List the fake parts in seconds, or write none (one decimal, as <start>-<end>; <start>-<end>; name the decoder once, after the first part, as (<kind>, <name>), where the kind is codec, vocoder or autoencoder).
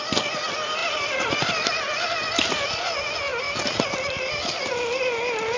0.8-1.3 (vocoder, BigVGAN v2)